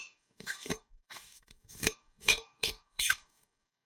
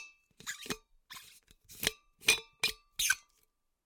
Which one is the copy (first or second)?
first